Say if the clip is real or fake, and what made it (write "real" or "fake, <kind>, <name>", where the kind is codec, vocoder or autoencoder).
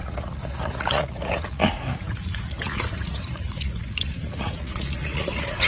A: fake, vocoder, Vocos